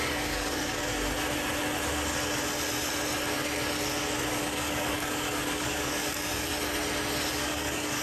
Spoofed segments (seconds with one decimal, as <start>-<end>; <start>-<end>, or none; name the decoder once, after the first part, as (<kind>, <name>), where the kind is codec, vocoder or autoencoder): 0.0-0.9 (codec, DAC); 4.3-6.5; 7.3-8.0